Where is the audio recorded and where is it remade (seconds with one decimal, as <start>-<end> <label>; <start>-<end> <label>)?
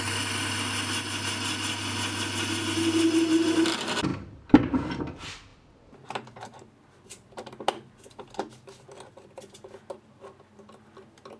0.0-11.4 recorded